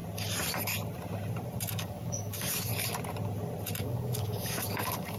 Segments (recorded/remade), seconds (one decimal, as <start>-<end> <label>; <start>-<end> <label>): 0.0-1.7 recorded; 1.7-2.7 remade; 2.7-3.8 recorded; 3.8-5.2 remade